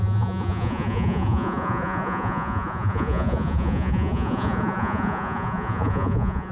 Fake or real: fake